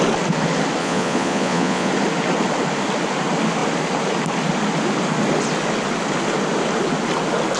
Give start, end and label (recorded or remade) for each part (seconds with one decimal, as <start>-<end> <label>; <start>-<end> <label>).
0.0-0.8 recorded; 0.8-1.9 remade; 1.9-7.6 recorded